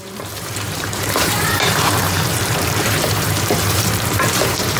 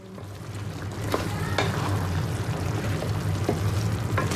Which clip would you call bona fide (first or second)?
second